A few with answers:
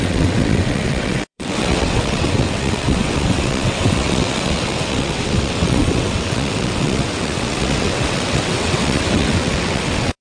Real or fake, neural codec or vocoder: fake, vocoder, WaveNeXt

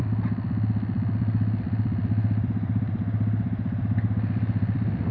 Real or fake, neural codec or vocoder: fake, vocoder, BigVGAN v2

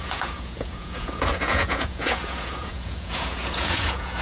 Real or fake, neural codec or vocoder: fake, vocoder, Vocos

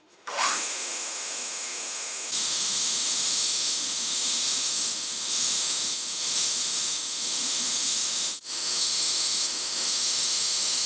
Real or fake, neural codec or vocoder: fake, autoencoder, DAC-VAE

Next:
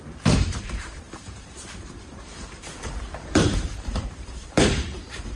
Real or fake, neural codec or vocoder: fake, vocoder, BigVGAN v2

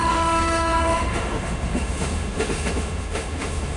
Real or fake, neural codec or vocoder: fake, autoencoder, DAC-VAE